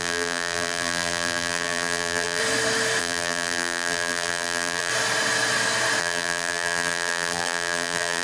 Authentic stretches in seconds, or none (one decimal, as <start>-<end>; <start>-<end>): 2.4-3.0; 4.9-6.0